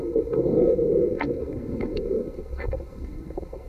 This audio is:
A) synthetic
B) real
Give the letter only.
A